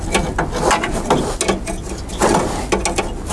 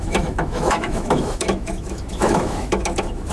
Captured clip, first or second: first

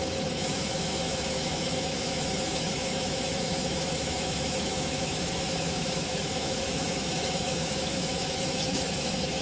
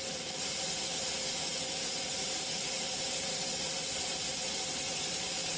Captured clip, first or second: second